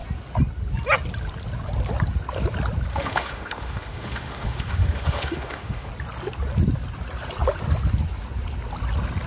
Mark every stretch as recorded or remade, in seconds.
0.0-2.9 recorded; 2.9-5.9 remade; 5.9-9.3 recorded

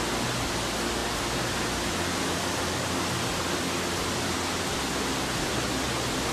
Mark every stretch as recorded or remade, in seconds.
0.0-6.3 recorded

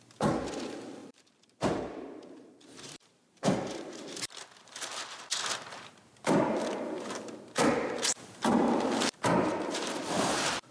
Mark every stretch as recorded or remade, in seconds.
0.0-10.7 remade

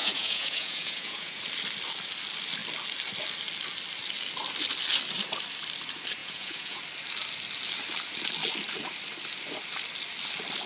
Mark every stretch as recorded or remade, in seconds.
0.0-1.4 remade; 1.4-6.2 recorded; 6.2-6.8 remade; 6.8-10.7 recorded

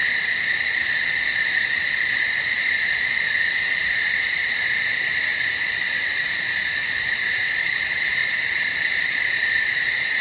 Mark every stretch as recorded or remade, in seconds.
0.0-1.2 recorded; 1.2-8.2 remade; 8.2-9.0 recorded; 9.0-10.2 remade

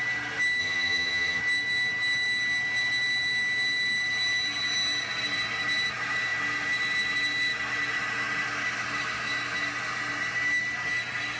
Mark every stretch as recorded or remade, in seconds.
0.0-0.6 recorded; 0.6-1.4 remade; 1.4-11.4 recorded